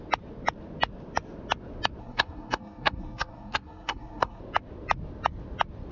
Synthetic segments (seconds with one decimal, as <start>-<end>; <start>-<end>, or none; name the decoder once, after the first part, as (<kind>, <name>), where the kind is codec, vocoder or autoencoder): 2.0-4.4 (codec, SNAC)